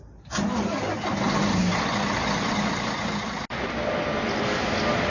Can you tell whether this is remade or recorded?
recorded